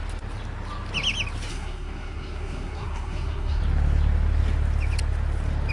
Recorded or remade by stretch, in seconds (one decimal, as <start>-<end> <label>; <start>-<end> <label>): 0.0-1.5 recorded; 1.5-3.6 remade; 3.6-5.7 recorded